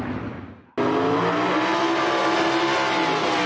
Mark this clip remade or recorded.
recorded